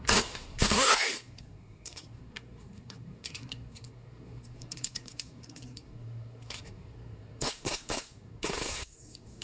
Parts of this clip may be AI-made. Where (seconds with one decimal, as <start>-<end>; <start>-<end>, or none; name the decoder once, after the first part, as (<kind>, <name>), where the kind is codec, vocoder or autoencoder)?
0.0-9.4 (codec, SNAC)